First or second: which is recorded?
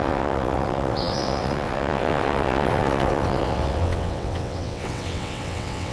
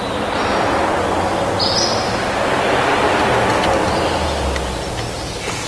second